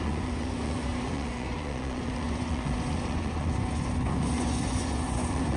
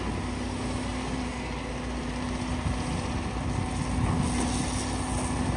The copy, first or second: first